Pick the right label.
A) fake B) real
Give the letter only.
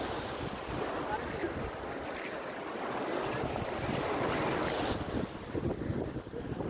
B